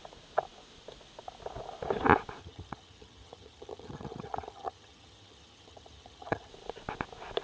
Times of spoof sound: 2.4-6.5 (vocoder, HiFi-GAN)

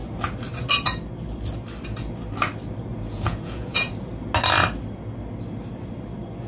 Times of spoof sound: 2.9-3.9 (vocoder, Vocos)